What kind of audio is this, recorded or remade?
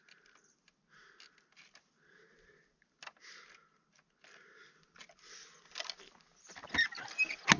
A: recorded